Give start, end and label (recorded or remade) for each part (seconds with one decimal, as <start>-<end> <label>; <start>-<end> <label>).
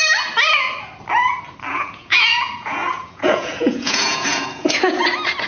0.0-1.7 recorded; 1.7-5.0 remade; 5.0-5.5 recorded